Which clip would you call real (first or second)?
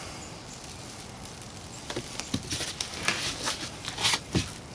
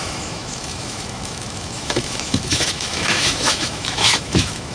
first